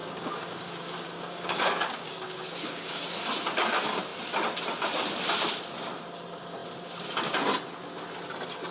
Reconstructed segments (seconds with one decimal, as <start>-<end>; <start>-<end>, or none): 0.0-3.1